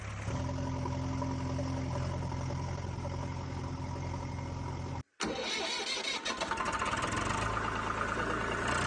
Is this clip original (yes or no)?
yes